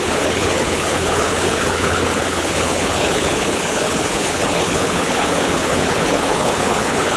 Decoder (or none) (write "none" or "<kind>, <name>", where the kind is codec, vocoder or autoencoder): codec, HILCodec